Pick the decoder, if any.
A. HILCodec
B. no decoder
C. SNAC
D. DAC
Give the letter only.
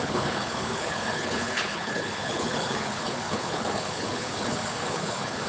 A